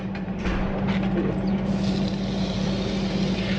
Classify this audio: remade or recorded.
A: recorded